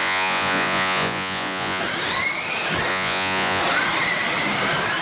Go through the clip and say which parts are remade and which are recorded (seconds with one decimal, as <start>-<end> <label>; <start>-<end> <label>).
0.0-1.8 remade; 1.8-2.9 recorded; 2.9-3.6 remade; 3.6-5.0 recorded